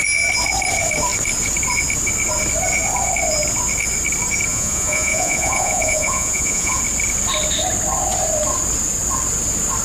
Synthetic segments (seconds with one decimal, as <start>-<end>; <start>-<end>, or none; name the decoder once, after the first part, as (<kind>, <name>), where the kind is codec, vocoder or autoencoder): 4.5-6.8 (vocoder, Vocos)